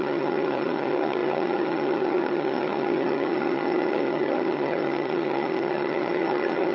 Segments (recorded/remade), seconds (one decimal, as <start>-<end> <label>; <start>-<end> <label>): 0.0-6.7 remade